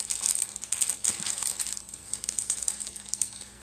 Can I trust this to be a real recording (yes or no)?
no